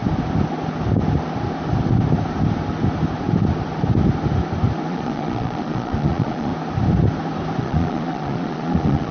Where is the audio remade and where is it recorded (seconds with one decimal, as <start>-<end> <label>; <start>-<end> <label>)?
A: 0.0-4.9 recorded; 4.9-6.5 remade; 6.5-7.6 recorded; 7.6-9.1 remade